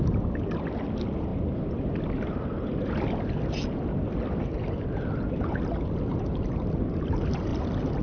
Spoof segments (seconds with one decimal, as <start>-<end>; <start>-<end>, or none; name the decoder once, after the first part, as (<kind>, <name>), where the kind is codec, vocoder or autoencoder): none